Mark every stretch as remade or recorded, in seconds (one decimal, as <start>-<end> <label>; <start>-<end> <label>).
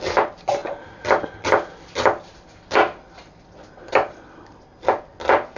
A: 0.0-5.6 recorded